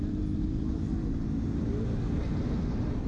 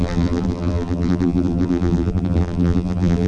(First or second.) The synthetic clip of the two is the second